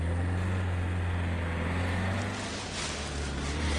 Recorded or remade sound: recorded